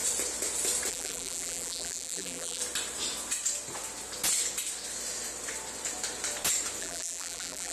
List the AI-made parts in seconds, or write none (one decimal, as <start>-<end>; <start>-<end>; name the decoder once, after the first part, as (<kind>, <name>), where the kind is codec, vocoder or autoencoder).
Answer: 0.9-2.6 (vocoder, BigVGAN v2); 6.8-7.7